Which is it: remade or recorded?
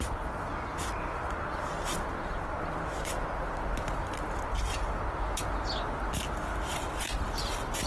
recorded